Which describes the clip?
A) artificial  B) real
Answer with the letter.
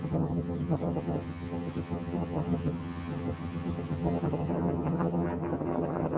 A